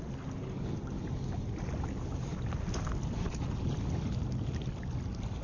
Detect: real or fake real